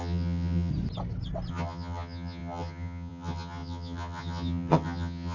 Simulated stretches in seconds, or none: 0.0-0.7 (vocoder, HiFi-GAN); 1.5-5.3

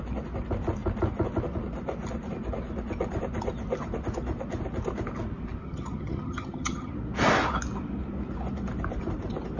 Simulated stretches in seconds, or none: 5.6-6.9 (vocoder, HiFi-GAN)

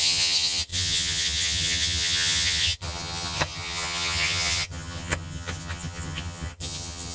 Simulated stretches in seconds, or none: 0.0-7.1 (vocoder, HiFi-GAN)

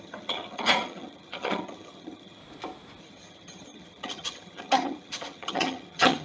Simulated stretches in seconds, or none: 0.0-2.4 (vocoder, HiFi-GAN); 3.0-6.2

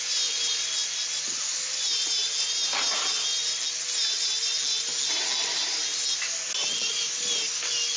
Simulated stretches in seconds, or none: none

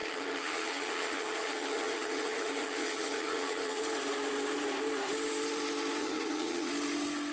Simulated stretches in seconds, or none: 0.0-3.8 (vocoder, HiFi-GAN); 6.0-6.7

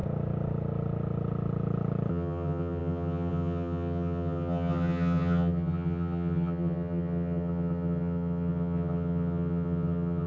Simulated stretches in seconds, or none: 2.1-10.3 (vocoder, HiFi-GAN)

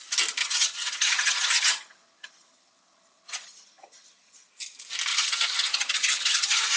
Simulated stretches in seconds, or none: 0.4-4.5 (vocoder, HiFi-GAN); 5.1-6.8